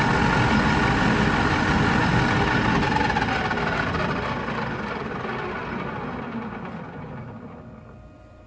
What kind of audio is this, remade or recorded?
recorded